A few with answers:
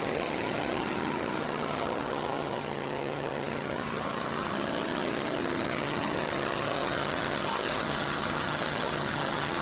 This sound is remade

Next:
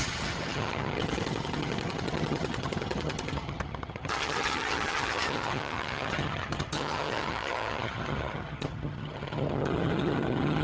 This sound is remade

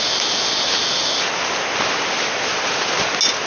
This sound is recorded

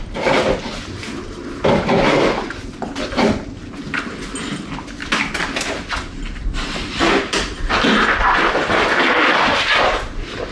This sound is recorded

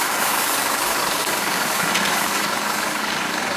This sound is remade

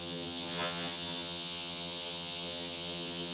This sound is remade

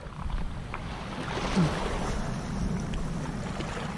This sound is recorded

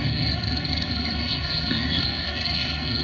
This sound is remade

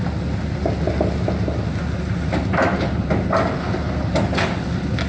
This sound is recorded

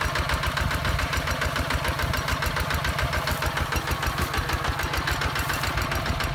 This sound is recorded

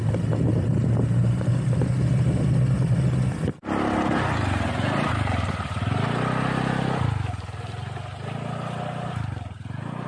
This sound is recorded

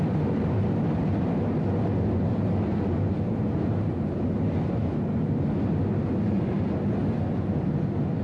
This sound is recorded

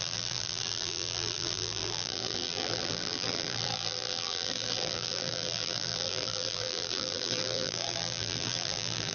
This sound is remade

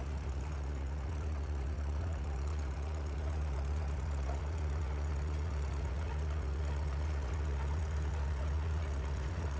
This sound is remade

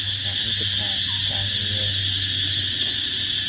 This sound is recorded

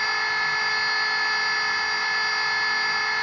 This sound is recorded